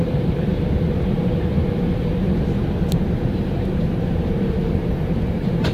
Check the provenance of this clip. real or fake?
fake